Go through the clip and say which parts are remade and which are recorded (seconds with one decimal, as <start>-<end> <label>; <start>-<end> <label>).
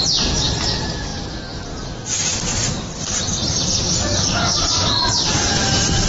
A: 0.0-2.5 recorded; 2.5-6.1 remade